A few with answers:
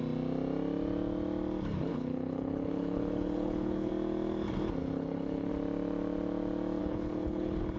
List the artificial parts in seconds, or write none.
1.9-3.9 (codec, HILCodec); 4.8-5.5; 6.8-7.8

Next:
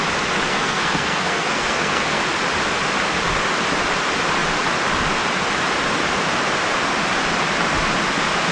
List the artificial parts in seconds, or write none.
0.5-2.2 (codec, SNAC)